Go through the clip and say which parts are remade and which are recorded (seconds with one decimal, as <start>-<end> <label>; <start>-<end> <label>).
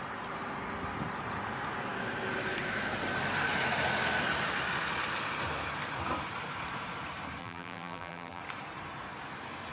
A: 0.0-7.4 recorded; 7.4-8.4 remade; 8.4-9.7 recorded